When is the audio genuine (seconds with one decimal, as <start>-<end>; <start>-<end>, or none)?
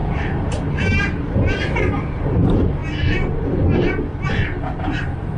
2.8-4.6